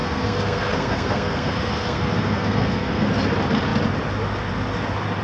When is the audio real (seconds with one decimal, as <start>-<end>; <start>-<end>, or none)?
3.1-5.2